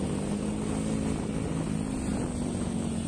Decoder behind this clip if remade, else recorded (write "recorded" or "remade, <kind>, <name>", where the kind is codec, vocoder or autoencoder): recorded